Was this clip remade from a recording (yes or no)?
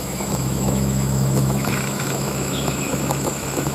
yes